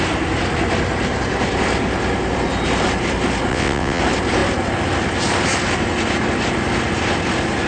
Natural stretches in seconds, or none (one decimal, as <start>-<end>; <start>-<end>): 0.0-3.5; 4.0-7.7

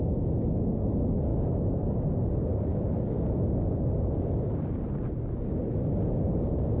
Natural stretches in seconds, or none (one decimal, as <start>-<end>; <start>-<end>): 0.0-6.8

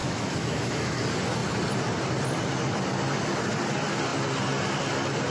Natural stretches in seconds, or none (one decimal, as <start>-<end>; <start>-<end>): 1.0-5.3

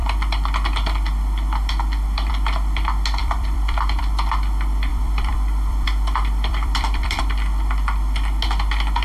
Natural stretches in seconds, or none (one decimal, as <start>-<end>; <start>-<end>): 0.0-3.2; 4.0-4.9; 7.2-9.0

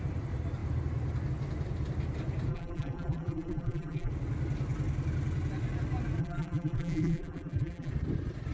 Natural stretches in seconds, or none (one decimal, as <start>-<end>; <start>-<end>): 0.0-2.5; 4.1-6.2; 7.9-8.5

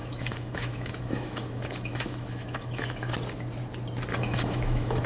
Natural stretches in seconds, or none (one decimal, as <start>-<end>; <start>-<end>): 3.1-4.1

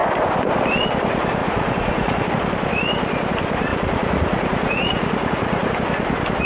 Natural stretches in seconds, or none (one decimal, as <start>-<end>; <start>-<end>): 0.0-1.4; 2.3-3.7; 5.7-6.5